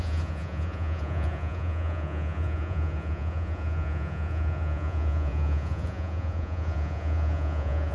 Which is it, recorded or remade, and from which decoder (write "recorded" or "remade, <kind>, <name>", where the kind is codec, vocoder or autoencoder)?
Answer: remade, vocoder, Vocos